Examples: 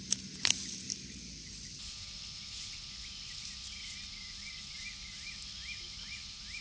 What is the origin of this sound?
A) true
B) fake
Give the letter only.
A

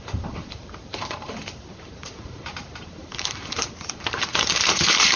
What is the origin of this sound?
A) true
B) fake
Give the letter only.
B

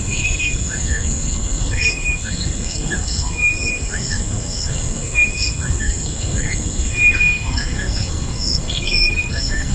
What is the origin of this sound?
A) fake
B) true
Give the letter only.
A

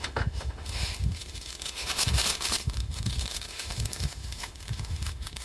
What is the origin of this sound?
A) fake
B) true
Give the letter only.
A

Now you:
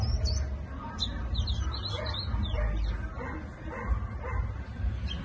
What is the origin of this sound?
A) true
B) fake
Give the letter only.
A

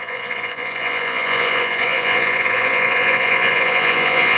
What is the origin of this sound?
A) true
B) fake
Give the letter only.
B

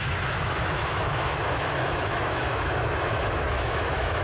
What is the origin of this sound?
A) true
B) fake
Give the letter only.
B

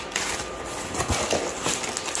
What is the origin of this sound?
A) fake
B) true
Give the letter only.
B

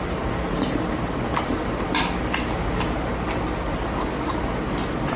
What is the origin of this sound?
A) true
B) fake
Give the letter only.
A